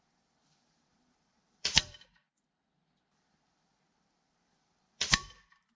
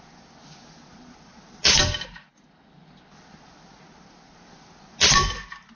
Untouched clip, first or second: second